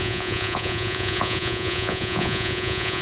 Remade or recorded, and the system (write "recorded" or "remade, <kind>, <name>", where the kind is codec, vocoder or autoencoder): remade, vocoder, Vocos